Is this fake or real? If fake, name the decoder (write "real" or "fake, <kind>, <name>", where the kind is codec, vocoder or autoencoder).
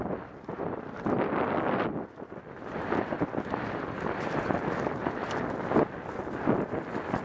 real